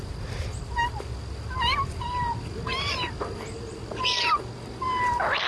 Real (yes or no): yes